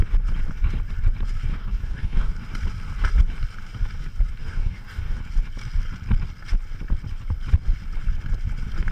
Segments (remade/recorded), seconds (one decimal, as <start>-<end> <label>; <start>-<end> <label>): 0.0-1.5 recorded; 1.5-2.3 remade; 2.3-4.4 recorded; 4.4-5.2 remade; 5.2-8.9 recorded